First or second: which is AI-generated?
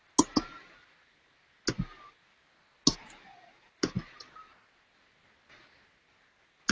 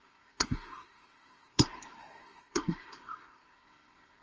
second